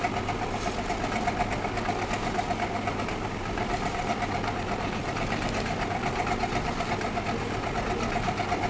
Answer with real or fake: real